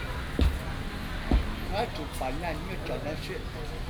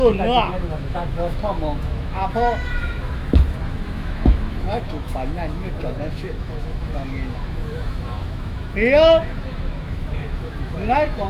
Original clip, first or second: first